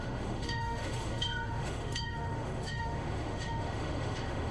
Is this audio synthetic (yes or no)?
yes